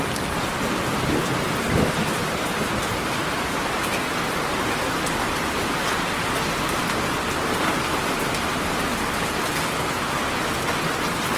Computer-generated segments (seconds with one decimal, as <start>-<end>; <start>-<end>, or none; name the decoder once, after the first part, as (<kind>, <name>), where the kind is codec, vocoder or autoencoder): none